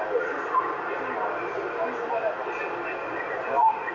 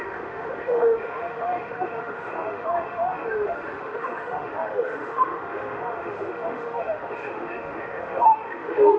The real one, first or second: first